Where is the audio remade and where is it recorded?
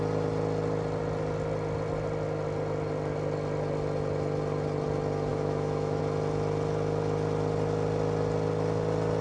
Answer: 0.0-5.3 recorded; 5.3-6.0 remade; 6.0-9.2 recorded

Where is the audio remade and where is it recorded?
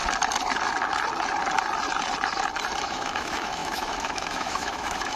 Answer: 0.0-2.8 recorded; 2.8-5.2 remade